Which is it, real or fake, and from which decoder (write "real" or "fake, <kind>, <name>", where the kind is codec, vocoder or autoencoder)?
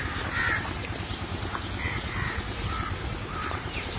real